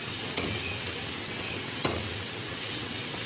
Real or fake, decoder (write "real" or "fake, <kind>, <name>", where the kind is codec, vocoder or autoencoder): fake, vocoder, WaveNeXt